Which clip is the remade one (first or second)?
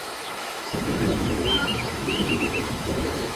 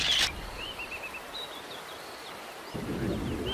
first